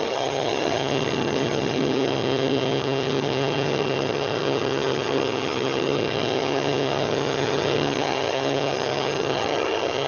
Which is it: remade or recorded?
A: remade